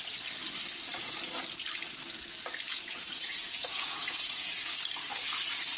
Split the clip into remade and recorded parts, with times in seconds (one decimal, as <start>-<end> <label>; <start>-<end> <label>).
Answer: 0.0-2.7 recorded; 2.7-4.7 remade; 4.7-5.8 recorded